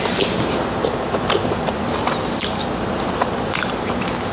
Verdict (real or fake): real